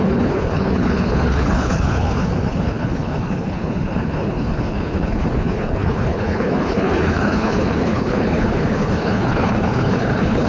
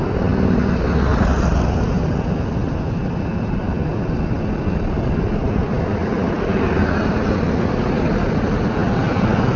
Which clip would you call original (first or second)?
second